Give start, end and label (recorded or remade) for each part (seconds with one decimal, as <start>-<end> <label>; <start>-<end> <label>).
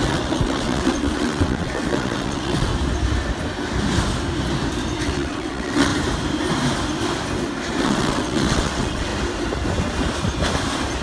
0.0-2.7 remade; 2.7-5.0 recorded; 5.0-5.9 remade; 5.9-7.8 recorded; 7.8-9.1 remade; 9.1-11.0 recorded